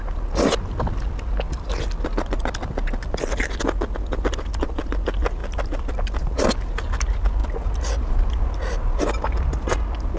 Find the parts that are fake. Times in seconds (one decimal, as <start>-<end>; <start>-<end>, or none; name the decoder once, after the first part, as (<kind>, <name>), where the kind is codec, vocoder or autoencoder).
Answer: none